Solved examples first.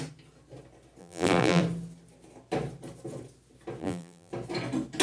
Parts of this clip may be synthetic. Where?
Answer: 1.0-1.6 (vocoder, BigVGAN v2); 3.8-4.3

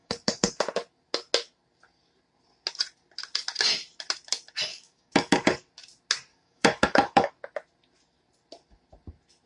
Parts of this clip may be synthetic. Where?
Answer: 0.0-0.6 (codec, DAC); 4.7-5.6; 6.3-7.3

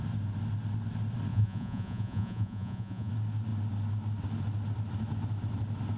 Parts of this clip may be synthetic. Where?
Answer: 1.3-3.1 (vocoder, Vocos)

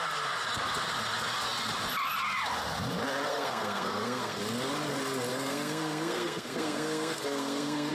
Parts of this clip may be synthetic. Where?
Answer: 3.3-4.4 (codec, SNAC); 5.3-7.9

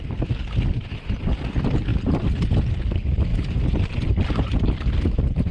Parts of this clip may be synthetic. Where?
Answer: none

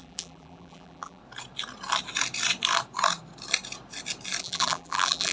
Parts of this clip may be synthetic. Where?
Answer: 0.0-1.2 (vocoder, BigVGAN v2); 4.4-5.3

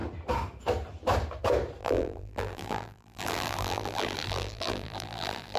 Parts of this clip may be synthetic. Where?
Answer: 1.8-5.6 (vocoder, BigVGAN v2)

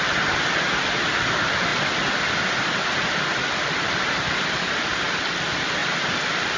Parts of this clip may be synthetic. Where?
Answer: none